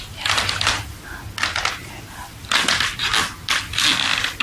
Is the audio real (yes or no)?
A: yes